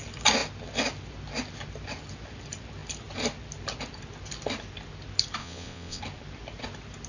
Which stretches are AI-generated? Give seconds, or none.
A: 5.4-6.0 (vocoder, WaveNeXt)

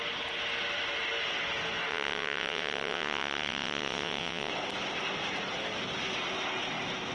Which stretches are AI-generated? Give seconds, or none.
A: 1.9-4.5 (vocoder, WaveNeXt)